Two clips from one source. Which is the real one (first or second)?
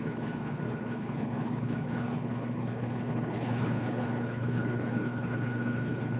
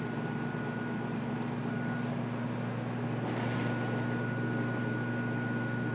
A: second